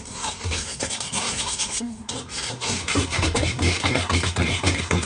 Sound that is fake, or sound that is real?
fake